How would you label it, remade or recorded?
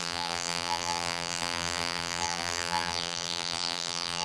remade